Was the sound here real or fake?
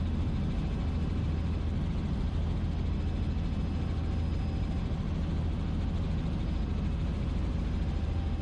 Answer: real